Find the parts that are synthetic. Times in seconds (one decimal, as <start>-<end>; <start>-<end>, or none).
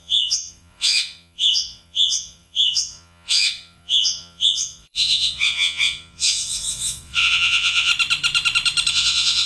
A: 0.0-7.9; 8.9-9.5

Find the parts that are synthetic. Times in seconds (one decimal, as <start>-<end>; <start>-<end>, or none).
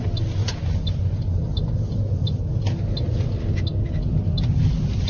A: none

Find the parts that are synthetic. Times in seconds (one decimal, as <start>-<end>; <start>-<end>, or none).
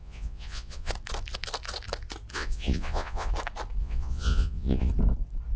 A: 0.0-0.9; 2.3-3.3; 3.8-4.9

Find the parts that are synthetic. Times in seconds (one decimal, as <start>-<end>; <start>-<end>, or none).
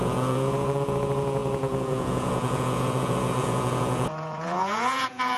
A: 0.0-5.4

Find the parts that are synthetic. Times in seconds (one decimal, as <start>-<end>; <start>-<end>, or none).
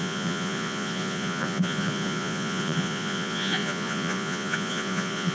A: 0.0-5.3